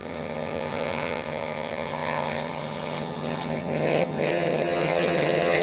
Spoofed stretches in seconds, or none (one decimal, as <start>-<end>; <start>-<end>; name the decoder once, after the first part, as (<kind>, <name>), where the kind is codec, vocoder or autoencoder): 0.0-5.6 (vocoder, HiFi-GAN)